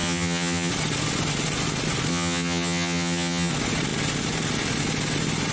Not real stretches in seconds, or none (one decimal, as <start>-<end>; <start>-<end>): 0.0-0.7; 2.1-3.5